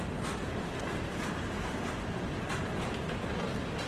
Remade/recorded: recorded